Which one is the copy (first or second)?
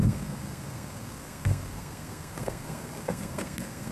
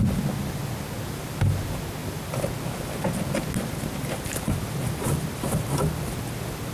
first